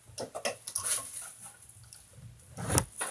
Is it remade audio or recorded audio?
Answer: recorded